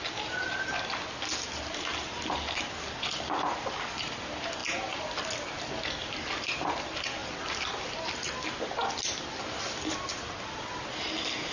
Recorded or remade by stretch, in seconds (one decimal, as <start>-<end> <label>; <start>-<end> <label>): 0.0-7.2 recorded; 7.2-7.8 remade; 7.8-11.5 recorded